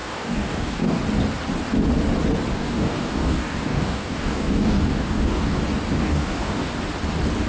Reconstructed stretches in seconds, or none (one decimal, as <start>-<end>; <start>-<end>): 0.0-1.0; 2.5-5.6; 6.0-6.7